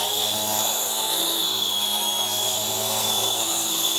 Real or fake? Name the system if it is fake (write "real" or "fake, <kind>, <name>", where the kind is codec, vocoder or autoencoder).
fake, codec, SNAC